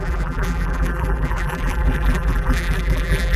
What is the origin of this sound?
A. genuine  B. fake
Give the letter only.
B